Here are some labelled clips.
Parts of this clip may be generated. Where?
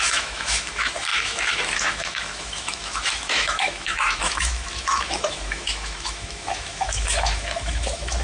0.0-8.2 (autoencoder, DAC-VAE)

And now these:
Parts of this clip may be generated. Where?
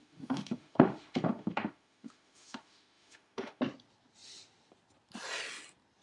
0.0-3.6 (autoencoder, DAC-VAE)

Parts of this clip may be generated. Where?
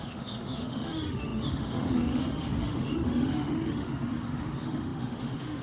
0.0-5.6 (autoencoder, DAC-VAE)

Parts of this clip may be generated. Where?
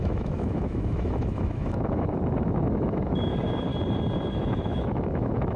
0.0-3.7 (autoencoder, DAC-VAE); 4.3-5.6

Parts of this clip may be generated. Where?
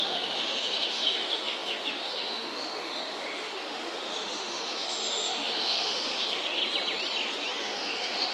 0.0-6.6 (autoencoder, DAC-VAE); 7.6-8.3